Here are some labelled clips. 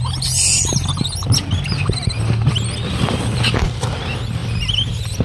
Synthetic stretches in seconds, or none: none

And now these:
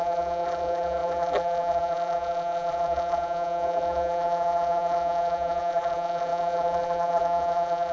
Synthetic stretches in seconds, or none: 0.0-7.9 (vocoder, BigVGAN v2)

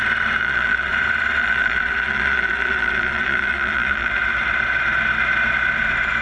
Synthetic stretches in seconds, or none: 0.4-0.9 (vocoder, Vocos); 1.4-4.1

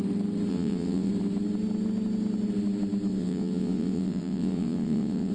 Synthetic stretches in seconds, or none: 0.5-1.1 (vocoder, WaveNeXt); 3.1-5.3

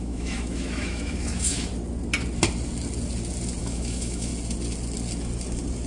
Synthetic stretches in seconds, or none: 0.0-1.7 (autoencoder, DAC-VAE); 3.6-4.3

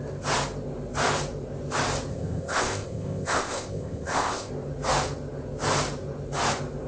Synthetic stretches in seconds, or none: 2.1-4.5 (codec, ZipCodec)

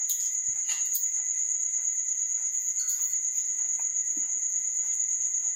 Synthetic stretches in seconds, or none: 0.0-1.2 (vocoder, Vocos); 2.0-5.6